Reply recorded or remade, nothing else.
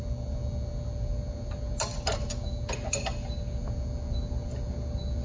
recorded